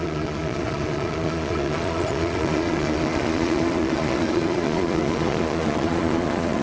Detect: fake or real fake